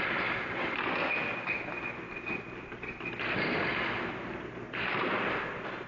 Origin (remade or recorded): recorded